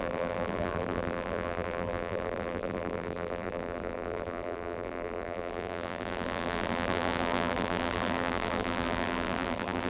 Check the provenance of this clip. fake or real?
fake